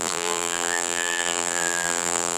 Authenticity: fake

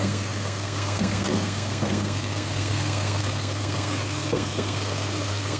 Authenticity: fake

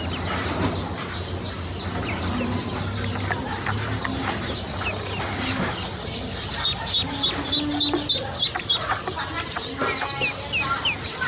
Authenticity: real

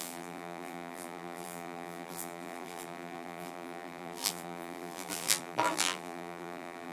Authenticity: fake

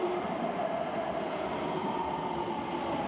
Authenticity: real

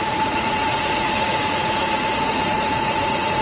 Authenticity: fake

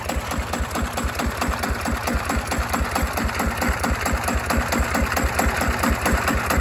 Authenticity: real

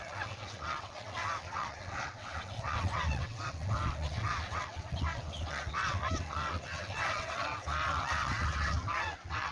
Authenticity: fake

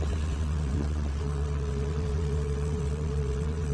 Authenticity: fake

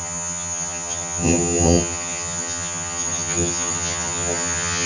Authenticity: fake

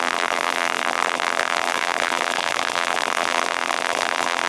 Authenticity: fake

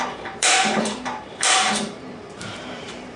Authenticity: fake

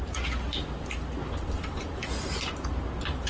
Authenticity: real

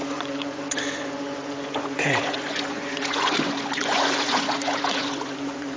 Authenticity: fake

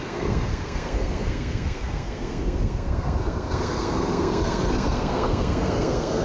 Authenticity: fake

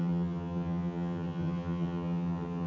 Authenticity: fake